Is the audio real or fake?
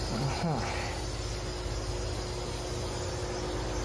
real